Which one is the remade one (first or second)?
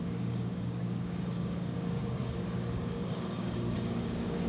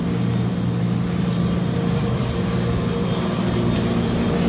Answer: first